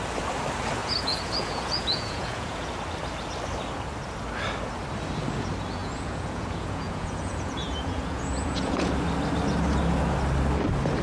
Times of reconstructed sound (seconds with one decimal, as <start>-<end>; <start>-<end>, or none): 0.8-2.7; 5.8-8.9